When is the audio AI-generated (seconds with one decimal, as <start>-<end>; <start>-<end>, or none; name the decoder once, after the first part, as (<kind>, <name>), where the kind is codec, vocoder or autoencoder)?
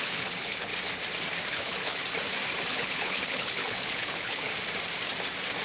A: 0.0-0.7 (codec, HILCodec); 1.5-2.0; 2.7-4.5